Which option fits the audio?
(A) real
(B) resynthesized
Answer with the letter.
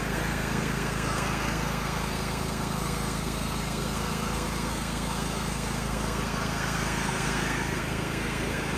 B